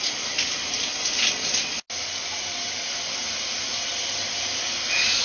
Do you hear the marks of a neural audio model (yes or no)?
no